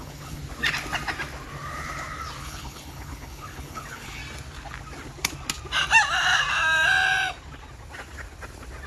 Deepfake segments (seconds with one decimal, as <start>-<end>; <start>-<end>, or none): 0.0-0.4; 2.4-4.2